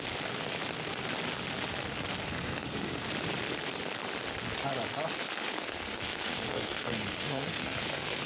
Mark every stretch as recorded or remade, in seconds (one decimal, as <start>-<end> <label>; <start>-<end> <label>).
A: 0.0-2.2 recorded; 2.2-3.1 remade; 3.1-5.5 recorded; 5.5-8.3 remade